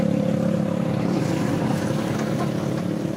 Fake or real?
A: fake